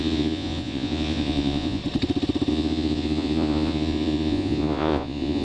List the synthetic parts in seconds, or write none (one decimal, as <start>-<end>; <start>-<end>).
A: 0.0-1.8; 2.5-5.4